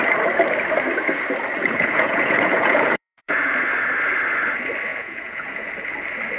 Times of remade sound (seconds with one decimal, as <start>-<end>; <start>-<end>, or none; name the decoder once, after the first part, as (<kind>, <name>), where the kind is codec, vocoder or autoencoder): 1.6-3.5 (vocoder, Vocos); 4.9-5.7